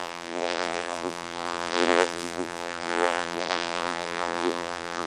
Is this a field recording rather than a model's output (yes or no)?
no